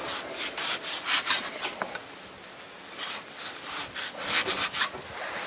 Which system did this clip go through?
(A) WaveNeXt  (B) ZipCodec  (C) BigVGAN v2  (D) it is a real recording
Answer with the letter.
D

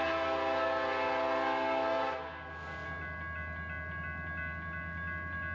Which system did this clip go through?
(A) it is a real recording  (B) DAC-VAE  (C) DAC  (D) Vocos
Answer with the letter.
A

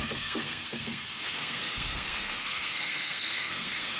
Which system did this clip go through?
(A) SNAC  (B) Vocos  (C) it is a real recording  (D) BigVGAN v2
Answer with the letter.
A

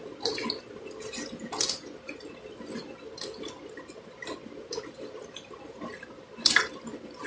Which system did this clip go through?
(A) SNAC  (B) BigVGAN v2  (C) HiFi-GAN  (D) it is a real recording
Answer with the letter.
D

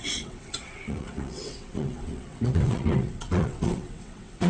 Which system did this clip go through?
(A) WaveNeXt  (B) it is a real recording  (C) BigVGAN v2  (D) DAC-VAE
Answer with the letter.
A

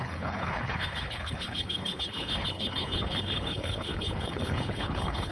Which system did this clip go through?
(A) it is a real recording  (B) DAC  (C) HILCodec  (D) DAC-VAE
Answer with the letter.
C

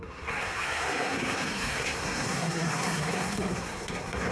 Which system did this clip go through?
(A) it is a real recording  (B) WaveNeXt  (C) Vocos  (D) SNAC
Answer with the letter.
D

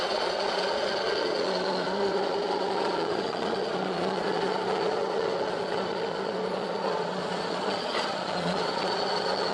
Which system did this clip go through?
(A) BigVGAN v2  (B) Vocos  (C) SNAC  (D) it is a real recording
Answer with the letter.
B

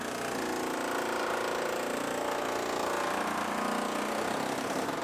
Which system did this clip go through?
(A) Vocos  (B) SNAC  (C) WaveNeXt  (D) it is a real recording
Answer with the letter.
D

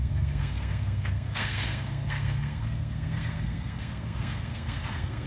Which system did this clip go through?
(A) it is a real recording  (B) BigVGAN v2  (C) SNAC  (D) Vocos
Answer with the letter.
C